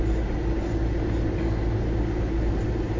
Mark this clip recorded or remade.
recorded